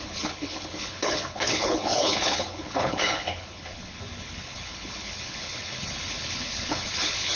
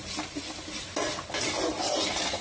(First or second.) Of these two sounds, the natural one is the second